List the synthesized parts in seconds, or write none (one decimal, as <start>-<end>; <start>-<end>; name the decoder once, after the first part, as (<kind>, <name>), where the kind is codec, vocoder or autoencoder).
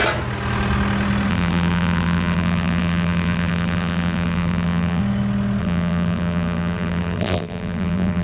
1.3-5.0 (vocoder, BigVGAN v2); 5.6-8.2